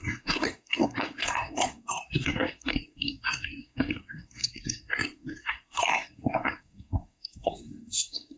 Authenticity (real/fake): fake